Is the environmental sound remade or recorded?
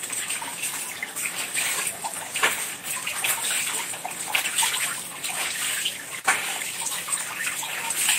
remade